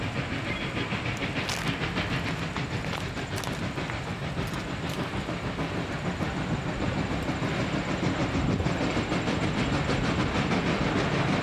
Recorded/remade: recorded